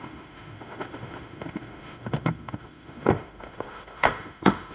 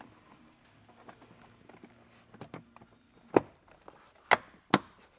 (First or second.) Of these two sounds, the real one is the second